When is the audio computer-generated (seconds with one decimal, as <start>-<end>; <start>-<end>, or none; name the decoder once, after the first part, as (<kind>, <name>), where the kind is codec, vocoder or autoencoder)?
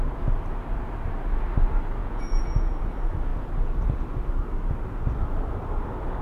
2.0-2.8 (vocoder, Vocos)